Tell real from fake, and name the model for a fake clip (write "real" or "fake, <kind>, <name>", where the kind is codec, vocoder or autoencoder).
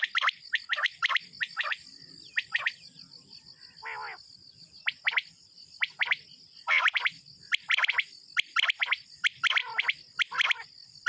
real